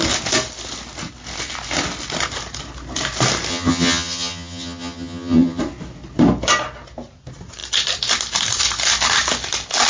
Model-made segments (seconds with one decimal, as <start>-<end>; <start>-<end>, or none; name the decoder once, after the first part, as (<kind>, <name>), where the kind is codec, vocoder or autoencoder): 3.5-5.6 (vocoder, HiFi-GAN)